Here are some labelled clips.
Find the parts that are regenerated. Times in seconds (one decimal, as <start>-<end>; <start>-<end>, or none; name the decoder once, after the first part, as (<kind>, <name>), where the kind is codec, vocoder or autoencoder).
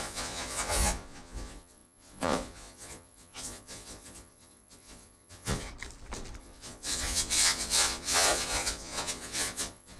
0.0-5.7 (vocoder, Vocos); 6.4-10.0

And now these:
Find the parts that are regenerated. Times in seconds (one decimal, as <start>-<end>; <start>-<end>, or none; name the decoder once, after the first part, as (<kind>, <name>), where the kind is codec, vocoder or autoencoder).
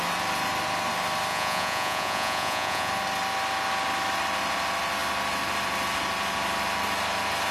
1.3-2.9 (vocoder, Vocos)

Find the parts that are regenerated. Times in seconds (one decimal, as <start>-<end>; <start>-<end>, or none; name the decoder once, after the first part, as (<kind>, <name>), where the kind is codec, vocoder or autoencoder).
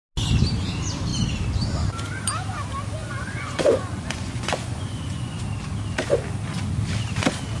3.0-5.4 (vocoder, Vocos)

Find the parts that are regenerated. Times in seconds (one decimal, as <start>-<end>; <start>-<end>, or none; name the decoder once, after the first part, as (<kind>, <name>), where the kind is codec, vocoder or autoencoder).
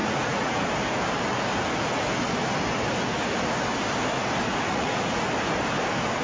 0.0-0.7 (vocoder, Vocos); 4.5-5.2